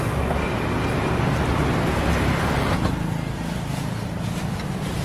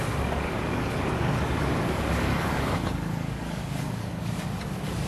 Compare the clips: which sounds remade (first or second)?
second